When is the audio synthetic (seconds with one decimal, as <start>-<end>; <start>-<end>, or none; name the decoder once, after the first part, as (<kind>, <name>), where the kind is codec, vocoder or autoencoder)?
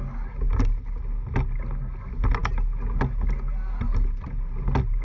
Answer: none